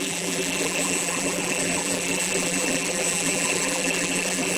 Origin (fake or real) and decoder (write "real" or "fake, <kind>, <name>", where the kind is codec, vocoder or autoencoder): fake, vocoder, BigVGAN v2